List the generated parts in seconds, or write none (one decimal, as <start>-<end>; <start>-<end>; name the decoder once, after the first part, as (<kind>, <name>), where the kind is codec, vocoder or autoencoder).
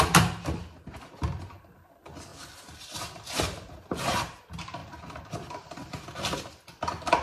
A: none